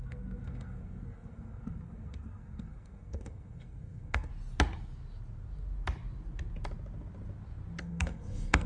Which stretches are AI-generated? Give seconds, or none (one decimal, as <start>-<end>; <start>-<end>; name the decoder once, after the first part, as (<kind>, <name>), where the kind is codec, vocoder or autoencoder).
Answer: 0.0-4.3 (codec, SNAC); 7.8-8.7